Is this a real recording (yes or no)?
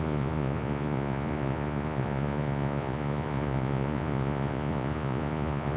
no